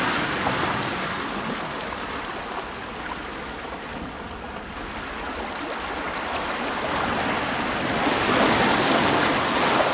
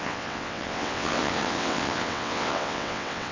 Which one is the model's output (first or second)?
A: second